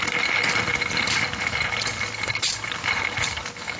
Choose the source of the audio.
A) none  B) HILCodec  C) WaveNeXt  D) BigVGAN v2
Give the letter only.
A